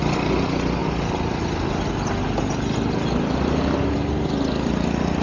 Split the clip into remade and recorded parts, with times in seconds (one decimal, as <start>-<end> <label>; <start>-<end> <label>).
0.0-5.2 recorded